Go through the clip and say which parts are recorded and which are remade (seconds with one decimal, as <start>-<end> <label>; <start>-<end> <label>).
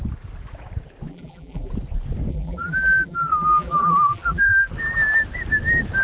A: 0.0-1.1 recorded; 1.1-1.7 remade; 1.7-2.3 recorded; 2.3-4.7 remade; 4.7-6.0 recorded